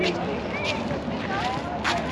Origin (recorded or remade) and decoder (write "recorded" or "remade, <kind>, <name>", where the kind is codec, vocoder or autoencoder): recorded